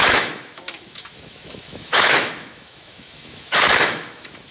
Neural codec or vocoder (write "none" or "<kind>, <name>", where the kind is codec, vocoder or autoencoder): autoencoder, DAC-VAE